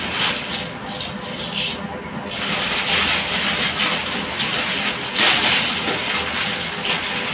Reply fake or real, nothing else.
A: real